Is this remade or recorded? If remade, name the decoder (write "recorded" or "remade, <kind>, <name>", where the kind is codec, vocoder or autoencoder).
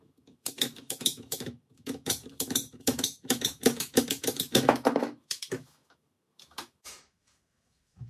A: remade, autoencoder, DAC-VAE